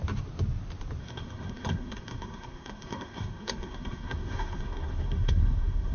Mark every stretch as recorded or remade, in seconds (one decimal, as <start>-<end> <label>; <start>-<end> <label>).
0.0-1.0 recorded; 1.0-5.9 remade